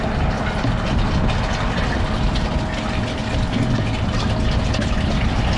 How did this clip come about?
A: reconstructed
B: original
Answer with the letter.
B